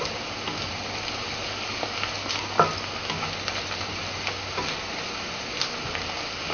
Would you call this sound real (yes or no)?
yes